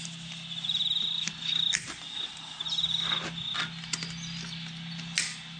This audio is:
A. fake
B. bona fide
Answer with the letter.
B